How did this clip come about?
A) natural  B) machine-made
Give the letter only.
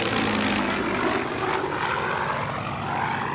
A